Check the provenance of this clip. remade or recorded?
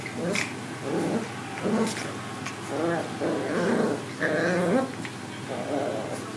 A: recorded